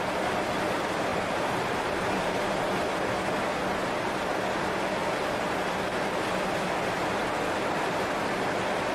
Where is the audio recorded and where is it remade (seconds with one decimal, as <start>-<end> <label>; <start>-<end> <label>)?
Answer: 0.0-1.1 recorded; 1.1-2.8 remade; 2.8-8.9 recorded